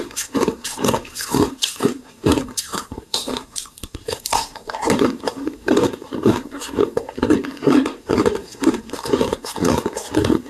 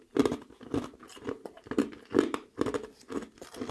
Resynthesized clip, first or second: first